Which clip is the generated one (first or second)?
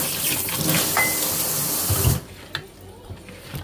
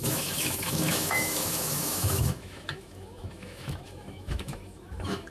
second